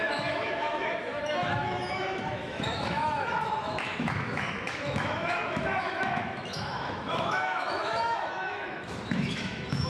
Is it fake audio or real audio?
fake